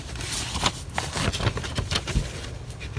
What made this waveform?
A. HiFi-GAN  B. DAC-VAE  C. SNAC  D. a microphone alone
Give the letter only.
D